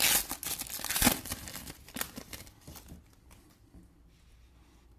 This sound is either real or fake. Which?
real